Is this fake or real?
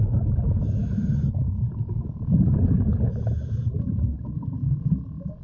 real